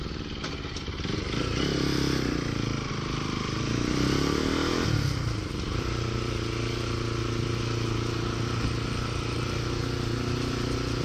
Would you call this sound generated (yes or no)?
no